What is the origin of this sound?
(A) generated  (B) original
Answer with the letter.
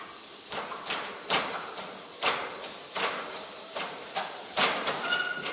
B